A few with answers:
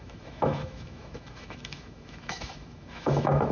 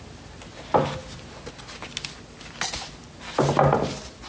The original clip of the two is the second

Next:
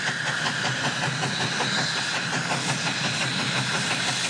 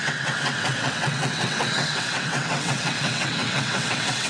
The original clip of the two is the first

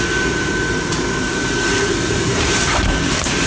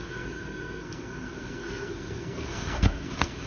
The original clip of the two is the first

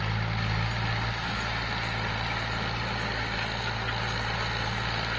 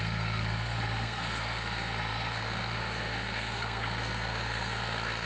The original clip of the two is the first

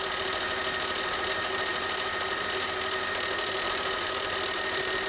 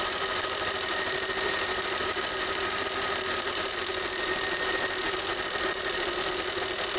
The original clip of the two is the first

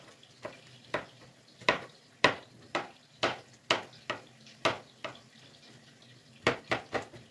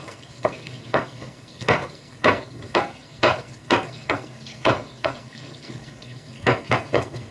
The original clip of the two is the first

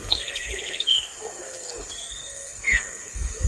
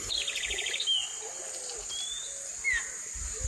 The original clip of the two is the second